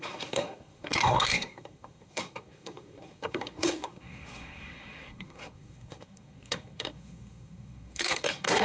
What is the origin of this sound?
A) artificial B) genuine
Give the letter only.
A